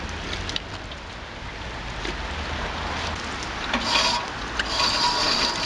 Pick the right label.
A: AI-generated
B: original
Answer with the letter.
B